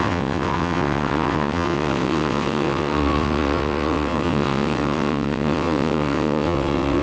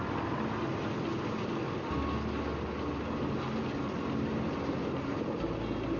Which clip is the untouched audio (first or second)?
second